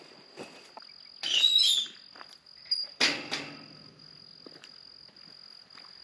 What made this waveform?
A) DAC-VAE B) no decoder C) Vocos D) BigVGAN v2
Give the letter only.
B